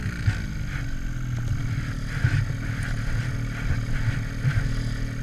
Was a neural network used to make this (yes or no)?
no